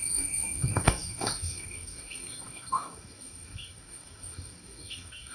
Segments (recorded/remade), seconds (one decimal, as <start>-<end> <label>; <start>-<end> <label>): 0.0-5.3 remade